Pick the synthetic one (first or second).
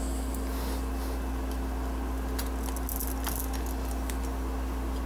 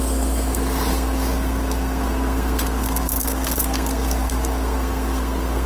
second